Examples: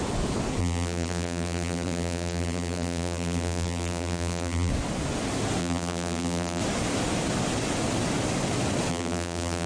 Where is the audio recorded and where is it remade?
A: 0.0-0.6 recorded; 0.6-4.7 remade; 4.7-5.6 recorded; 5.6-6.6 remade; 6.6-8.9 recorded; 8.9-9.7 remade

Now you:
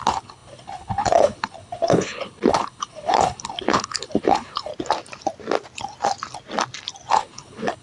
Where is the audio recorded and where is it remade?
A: 0.0-4.7 remade; 4.7-7.1 recorded; 7.1-7.8 remade